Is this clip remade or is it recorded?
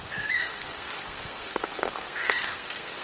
remade